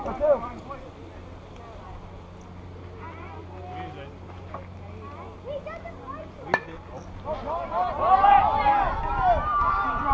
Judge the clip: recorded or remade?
recorded